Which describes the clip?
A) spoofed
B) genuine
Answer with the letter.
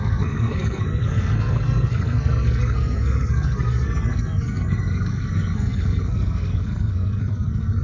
A